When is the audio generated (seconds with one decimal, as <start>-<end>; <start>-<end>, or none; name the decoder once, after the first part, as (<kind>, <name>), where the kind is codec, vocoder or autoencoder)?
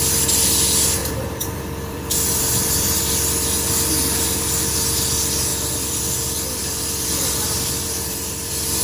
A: 1.0-3.0 (vocoder, BigVGAN v2); 6.6-8.8